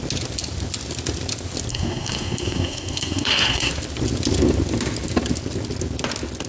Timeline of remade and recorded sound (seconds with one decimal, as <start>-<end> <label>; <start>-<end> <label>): 0.0-1.7 recorded; 1.7-3.7 remade; 3.7-6.5 recorded